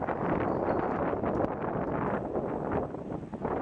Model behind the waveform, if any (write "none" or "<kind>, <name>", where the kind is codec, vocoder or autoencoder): none